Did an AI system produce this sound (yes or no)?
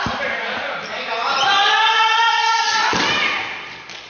no